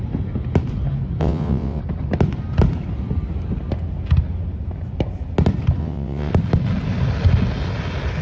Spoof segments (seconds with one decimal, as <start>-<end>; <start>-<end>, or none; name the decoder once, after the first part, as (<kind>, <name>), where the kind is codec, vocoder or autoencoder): 1.2-1.8 (vocoder, WaveNeXt); 5.8-6.3